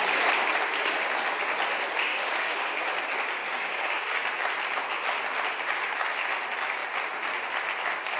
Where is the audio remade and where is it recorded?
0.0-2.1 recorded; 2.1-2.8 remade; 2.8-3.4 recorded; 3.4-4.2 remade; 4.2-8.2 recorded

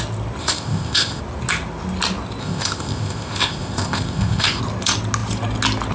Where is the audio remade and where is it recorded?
0.0-0.4 recorded; 0.4-1.2 remade; 1.2-2.4 recorded; 2.4-4.6 remade; 4.6-5.9 recorded

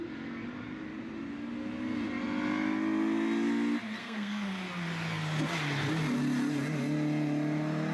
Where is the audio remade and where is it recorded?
0.0-4.0 recorded; 4.0-4.6 remade; 4.6-7.9 recorded